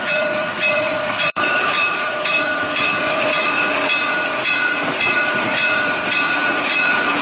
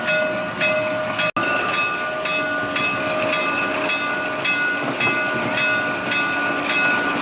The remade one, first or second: first